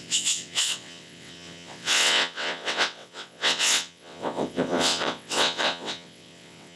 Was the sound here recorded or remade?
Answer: remade